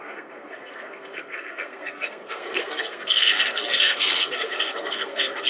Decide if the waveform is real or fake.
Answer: fake